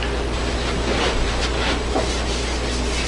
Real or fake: real